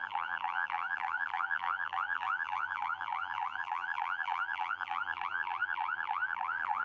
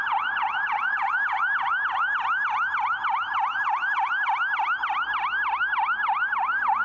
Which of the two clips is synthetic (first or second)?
first